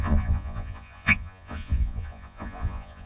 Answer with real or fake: fake